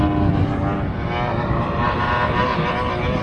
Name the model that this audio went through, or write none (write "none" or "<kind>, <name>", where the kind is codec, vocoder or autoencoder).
none